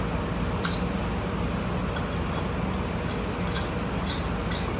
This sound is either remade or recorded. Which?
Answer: recorded